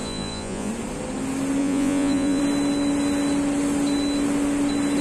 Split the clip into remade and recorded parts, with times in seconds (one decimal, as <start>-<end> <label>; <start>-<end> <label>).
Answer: 0.0-0.7 remade; 0.7-1.6 recorded; 1.6-2.4 remade; 2.4-5.0 recorded